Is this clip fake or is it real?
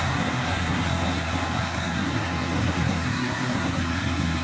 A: fake